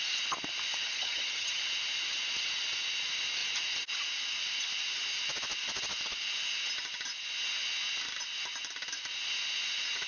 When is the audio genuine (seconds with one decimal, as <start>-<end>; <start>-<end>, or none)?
0.0-0.8; 1.6-10.1